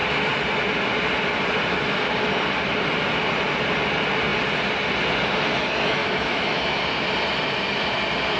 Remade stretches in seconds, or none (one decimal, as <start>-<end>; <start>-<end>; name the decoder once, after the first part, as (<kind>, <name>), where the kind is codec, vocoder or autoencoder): 6.0-6.8 (autoencoder, DAC-VAE)